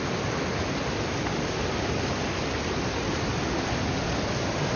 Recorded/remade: recorded